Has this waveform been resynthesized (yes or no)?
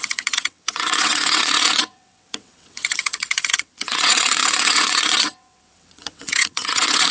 yes